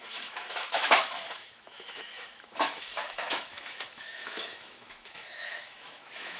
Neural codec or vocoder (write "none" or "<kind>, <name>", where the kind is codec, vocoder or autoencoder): autoencoder, DAC-VAE